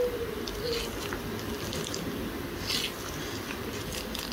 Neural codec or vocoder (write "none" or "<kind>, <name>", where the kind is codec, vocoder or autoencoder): none